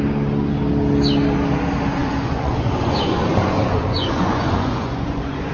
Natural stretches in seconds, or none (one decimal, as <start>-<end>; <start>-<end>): 0.0-2.0